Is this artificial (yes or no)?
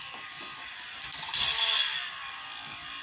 no